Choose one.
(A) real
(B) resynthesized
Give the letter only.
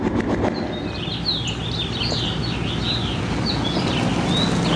A